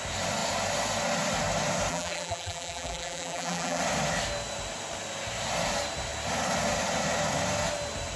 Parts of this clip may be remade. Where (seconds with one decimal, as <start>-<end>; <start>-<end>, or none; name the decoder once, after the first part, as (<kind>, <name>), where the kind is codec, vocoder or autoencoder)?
1.9-3.8 (vocoder, BigVGAN v2)